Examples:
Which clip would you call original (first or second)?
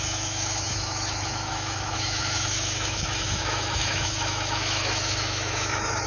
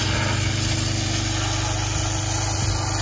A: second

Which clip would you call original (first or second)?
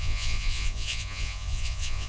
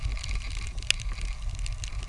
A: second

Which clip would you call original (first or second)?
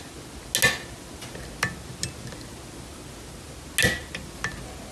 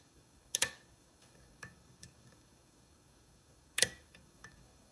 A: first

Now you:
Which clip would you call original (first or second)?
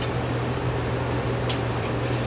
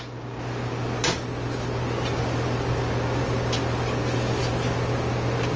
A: second